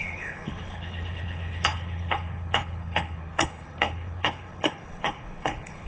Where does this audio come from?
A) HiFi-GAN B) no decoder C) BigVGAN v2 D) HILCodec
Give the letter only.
D